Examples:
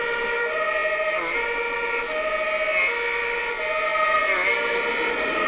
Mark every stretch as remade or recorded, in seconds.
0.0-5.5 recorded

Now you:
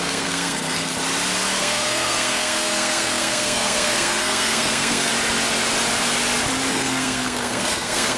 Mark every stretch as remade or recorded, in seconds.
0.0-0.9 remade; 0.9-1.6 recorded; 1.6-5.1 remade; 5.1-6.7 recorded; 6.7-8.2 remade

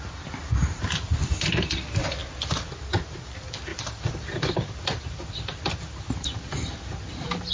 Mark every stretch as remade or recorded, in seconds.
0.0-7.5 remade

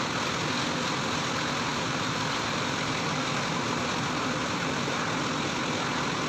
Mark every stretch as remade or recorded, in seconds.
0.0-1.7 recorded; 1.7-3.4 remade; 3.4-4.4 recorded; 4.4-5.0 remade; 5.0-6.3 recorded

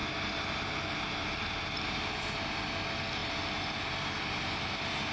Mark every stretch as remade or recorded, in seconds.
0.0-5.1 recorded